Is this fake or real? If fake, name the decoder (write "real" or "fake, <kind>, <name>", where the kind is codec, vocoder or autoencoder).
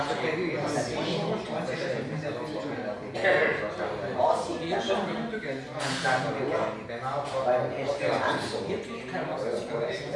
real